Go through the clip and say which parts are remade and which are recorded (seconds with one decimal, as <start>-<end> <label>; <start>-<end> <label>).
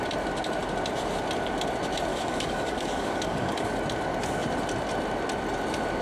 0.0-2.1 recorded; 2.1-3.8 remade; 3.8-6.0 recorded